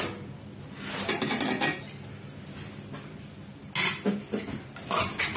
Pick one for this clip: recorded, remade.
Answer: recorded